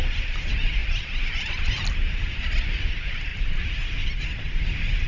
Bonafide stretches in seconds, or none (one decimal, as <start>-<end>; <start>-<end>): 0.0-3.3; 3.9-5.1